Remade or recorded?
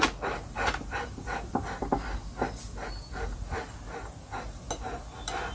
recorded